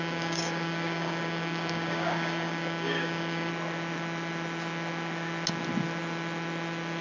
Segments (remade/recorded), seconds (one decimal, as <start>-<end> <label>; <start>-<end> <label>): 0.0-3.5 remade; 3.5-7.0 recorded